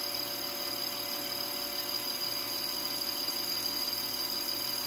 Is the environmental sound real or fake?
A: real